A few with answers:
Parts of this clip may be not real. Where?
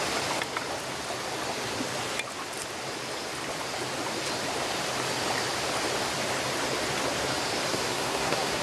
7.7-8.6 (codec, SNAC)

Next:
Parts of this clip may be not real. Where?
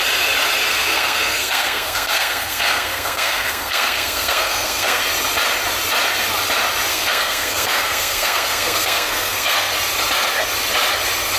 0.7-5.0 (codec, SNAC); 6.9-9.7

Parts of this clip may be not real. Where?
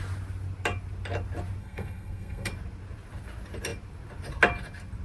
1.6-2.5 (codec, SNAC)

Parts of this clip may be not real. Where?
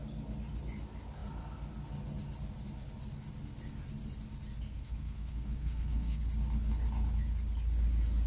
4.7-6.2 (codec, SNAC)